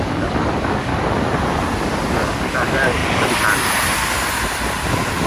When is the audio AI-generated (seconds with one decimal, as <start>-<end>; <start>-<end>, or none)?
0.0-0.9; 2.1-3.0